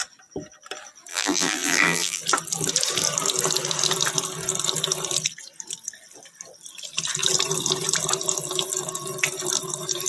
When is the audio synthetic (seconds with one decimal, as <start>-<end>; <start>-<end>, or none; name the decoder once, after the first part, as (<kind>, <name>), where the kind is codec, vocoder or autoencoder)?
1.1-2.2 (vocoder, BigVGAN v2)